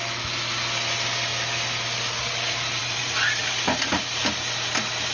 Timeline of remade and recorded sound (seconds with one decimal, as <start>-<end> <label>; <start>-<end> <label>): 0.0-2.8 recorded; 2.8-3.4 remade; 3.4-5.1 recorded